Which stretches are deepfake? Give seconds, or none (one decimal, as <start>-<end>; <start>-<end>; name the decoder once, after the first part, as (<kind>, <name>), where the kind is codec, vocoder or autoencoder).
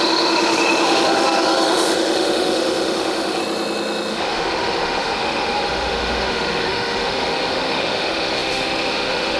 0.0-3.4 (autoencoder, DAC-VAE); 4.1-9.4